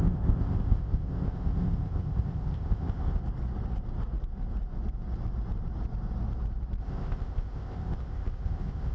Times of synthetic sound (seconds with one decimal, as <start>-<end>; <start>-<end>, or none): 0.0-3.2; 6.8-8.9